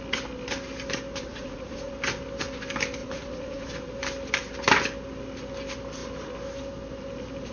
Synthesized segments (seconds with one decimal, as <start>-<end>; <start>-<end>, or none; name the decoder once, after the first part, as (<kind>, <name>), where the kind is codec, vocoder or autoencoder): 1.3-1.9 (vocoder, Vocos); 3.0-3.7